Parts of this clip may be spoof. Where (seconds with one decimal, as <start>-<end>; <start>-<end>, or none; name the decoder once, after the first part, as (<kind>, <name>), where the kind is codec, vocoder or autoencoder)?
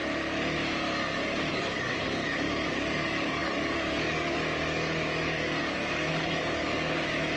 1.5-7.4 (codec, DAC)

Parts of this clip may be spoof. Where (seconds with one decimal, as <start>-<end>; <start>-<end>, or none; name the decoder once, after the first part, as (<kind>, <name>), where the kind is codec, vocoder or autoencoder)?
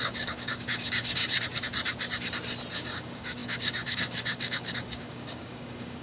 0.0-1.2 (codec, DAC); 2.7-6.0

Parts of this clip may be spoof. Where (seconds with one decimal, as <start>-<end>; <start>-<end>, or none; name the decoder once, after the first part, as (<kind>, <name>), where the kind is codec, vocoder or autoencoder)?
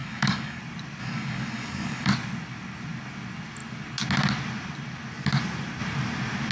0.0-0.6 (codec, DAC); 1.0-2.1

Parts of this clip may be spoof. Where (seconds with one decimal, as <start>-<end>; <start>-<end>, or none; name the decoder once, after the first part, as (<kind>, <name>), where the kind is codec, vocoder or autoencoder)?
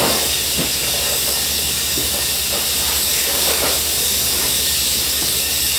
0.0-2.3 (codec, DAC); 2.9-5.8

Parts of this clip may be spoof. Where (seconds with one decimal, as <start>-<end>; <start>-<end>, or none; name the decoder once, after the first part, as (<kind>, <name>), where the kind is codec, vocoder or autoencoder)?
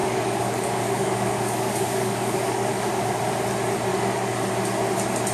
0.0-3.2 (codec, DAC); 3.9-4.5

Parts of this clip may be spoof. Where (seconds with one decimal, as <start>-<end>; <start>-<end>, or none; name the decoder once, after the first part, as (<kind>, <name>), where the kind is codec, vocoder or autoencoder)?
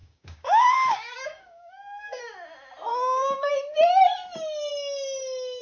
0.0-2.2 (codec, DAC); 2.9-3.5